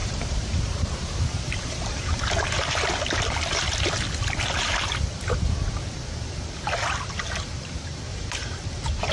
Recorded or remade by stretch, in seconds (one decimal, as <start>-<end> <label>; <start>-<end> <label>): 0.0-2.3 remade; 2.3-8.1 recorded; 8.1-9.1 remade

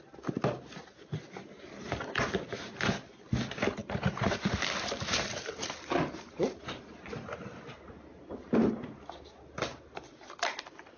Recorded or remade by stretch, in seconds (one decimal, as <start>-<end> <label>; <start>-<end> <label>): 0.0-3.8 recorded; 3.8-6.8 remade; 6.8-11.0 recorded

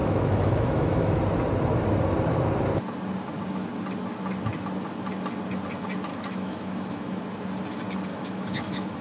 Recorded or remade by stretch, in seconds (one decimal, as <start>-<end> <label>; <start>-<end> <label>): 0.0-1.2 remade; 1.2-6.1 recorded; 6.1-7.2 remade; 7.2-8.1 recorded; 8.1-9.0 remade